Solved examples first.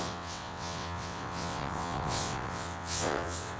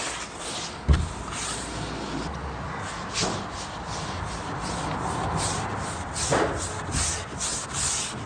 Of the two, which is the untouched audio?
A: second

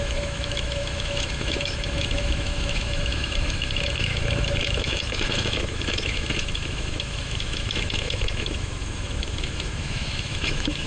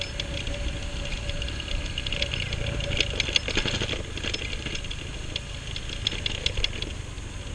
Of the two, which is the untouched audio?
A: second